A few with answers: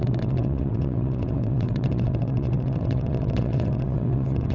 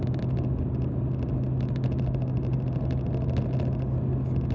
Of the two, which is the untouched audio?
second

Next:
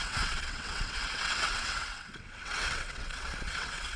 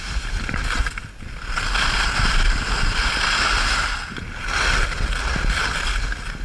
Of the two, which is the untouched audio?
second